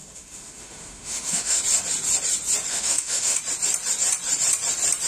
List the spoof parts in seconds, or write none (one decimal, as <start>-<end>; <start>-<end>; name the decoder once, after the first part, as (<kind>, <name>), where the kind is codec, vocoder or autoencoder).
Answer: 0.0-1.6 (autoencoder, DAC-VAE); 2.7-3.4